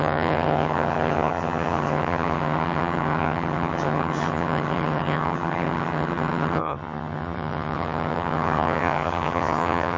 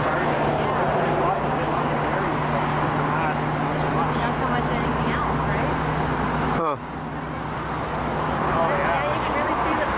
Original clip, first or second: second